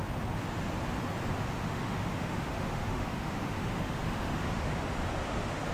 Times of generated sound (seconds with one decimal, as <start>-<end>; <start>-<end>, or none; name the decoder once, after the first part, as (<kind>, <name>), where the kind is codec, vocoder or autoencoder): 1.3-4.7 (autoencoder, DAC-VAE)